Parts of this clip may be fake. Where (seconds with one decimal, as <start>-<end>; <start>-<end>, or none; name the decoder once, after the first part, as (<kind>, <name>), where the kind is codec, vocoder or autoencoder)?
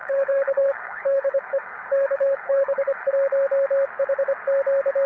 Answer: 0.0-3.1 (codec, HILCodec)